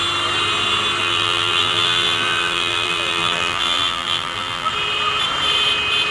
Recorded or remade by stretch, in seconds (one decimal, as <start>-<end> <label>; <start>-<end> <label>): 0.0-1.0 recorded; 1.0-4.7 remade; 4.7-6.1 recorded